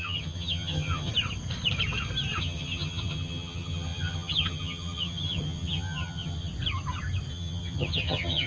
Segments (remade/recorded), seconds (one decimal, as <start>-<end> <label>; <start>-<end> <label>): 0.0-1.1 remade; 1.1-2.4 recorded; 2.4-6.5 remade; 6.5-7.3 recorded; 7.3-8.5 remade